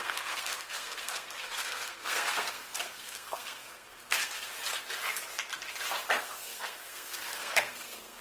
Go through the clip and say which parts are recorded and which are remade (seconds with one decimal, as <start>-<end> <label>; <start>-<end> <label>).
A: 0.0-4.5 remade; 4.5-6.1 recorded; 6.1-8.2 remade